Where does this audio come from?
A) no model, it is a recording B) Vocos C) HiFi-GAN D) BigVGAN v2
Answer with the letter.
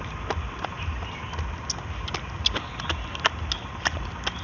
A